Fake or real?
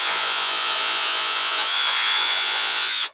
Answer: fake